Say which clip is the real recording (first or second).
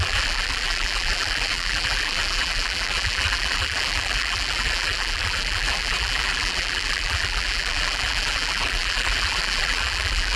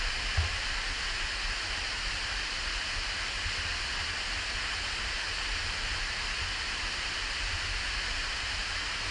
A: second